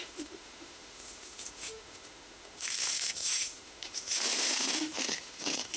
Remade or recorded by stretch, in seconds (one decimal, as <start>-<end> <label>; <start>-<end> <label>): 0.0-5.8 remade